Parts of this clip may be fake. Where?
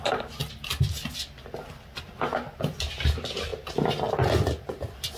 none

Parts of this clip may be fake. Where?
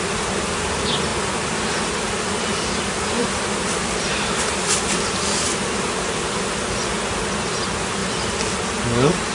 3.2-6.2 (vocoder, BigVGAN v2); 8.0-8.5